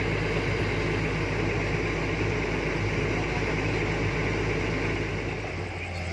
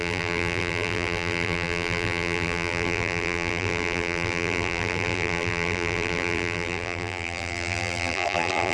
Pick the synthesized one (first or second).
second